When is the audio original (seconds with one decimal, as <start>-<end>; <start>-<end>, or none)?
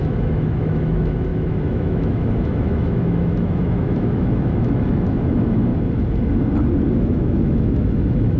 5.7-6.9